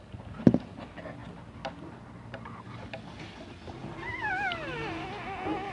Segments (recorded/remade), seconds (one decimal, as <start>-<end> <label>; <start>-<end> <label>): 0.0-1.2 recorded; 1.2-3.4 remade; 3.4-3.8 recorded; 3.8-4.3 remade; 4.3-5.7 recorded